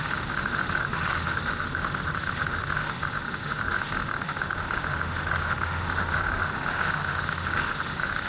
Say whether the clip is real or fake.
fake